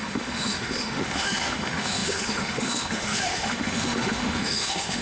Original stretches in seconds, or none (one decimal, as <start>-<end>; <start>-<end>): none